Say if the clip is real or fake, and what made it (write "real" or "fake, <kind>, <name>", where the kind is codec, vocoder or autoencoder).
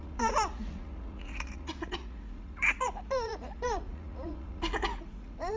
fake, vocoder, Vocos